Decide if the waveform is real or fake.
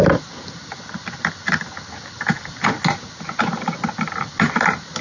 real